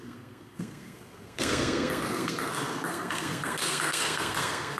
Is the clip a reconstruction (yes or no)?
yes